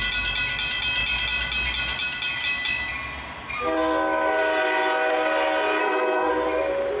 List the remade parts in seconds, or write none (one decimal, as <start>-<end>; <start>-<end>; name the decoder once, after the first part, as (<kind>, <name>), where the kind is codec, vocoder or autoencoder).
5.8-6.3 (codec, SNAC)